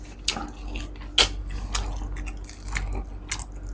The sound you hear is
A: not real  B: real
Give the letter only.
B